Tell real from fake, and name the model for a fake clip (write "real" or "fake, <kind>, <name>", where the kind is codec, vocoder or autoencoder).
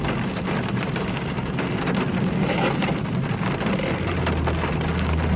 real